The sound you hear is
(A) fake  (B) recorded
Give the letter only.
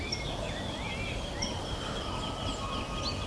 B